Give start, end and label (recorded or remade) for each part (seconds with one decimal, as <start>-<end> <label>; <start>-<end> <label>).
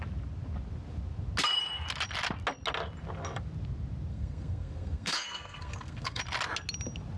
0.0-4.1 recorded; 4.1-6.2 remade; 6.2-7.2 recorded